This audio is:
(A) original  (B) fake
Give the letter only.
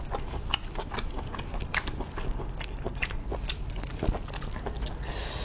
A